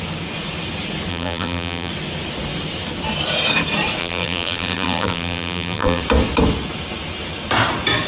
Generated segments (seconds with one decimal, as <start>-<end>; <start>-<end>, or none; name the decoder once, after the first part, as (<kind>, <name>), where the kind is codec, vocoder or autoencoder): 1.1-1.9 (vocoder, BigVGAN v2); 4.0-6.0

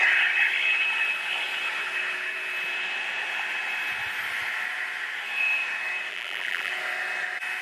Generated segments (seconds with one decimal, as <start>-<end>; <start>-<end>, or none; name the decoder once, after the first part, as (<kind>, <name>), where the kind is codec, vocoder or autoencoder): 6.1-6.7 (vocoder, BigVGAN v2)

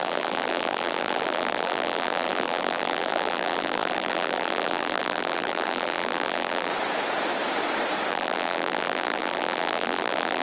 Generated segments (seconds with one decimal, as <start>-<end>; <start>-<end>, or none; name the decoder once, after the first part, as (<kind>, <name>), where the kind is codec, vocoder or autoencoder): 0.0-6.7 (vocoder, BigVGAN v2); 8.1-10.4

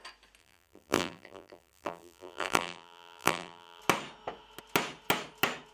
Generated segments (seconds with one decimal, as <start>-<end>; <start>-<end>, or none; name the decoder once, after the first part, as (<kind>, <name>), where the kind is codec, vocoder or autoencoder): 0.4-3.8 (vocoder, BigVGAN v2)

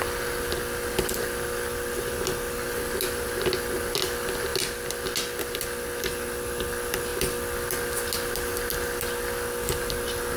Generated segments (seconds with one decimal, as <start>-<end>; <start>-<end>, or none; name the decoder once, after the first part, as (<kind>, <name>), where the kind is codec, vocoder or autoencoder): none

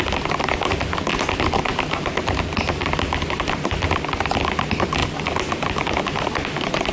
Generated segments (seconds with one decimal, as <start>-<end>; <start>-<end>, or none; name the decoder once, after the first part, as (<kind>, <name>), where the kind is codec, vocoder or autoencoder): 0.0-1.1 (vocoder, BigVGAN v2); 2.8-5.0; 5.5-6.9

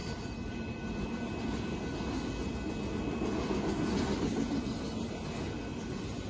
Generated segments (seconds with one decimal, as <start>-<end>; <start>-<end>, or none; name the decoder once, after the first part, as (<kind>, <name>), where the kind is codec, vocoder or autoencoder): 0.0-1.3 (vocoder, BigVGAN v2)